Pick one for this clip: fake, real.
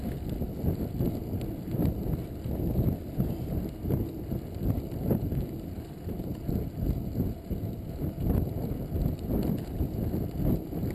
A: real